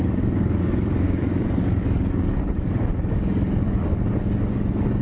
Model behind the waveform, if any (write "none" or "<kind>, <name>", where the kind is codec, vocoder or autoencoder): codec, DAC